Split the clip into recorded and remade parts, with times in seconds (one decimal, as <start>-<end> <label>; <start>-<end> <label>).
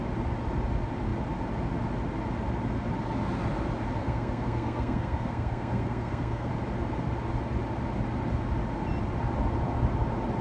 0.0-4.0 recorded; 4.0-6.5 remade; 6.5-10.4 recorded